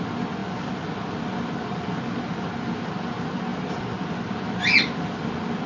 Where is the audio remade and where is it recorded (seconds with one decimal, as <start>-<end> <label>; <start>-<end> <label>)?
0.0-5.7 recorded